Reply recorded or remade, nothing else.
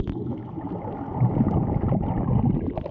recorded